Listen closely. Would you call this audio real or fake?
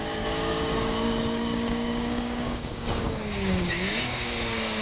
fake